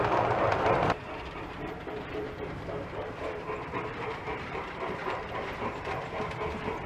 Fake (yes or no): yes